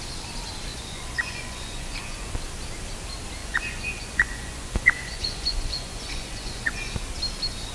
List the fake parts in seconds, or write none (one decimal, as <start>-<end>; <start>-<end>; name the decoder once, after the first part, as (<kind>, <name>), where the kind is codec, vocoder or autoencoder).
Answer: 0.7-2.3 (vocoder, Vocos); 3.4-6.9